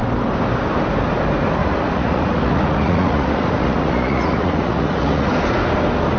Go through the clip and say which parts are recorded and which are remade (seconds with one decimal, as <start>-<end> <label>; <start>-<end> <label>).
0.0-1.6 recorded; 1.6-5.3 remade; 5.3-6.2 recorded